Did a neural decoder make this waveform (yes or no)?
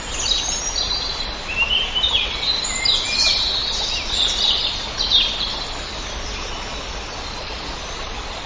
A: no